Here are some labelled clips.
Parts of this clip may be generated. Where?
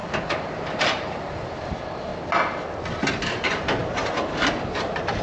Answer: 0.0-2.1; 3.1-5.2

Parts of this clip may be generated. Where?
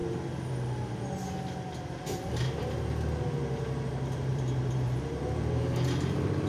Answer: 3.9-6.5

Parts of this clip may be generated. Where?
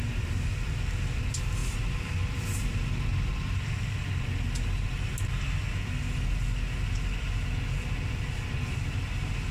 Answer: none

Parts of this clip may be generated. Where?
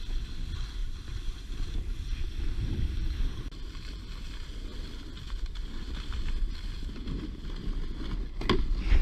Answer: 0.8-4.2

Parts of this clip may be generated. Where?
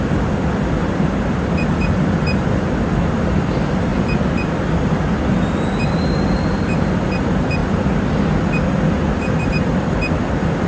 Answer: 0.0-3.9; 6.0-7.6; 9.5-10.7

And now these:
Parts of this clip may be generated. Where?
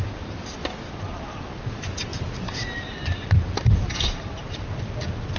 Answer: 0.6-1.5; 2.1-5.4